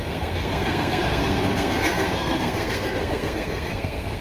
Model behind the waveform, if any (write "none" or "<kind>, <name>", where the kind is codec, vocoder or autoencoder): codec, SNAC